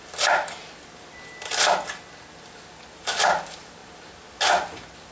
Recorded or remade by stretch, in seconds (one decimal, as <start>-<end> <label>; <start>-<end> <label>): 0.0-5.1 recorded